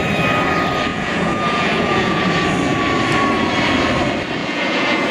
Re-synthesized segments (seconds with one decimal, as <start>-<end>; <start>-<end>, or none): 0.9-2.2; 4.4-5.1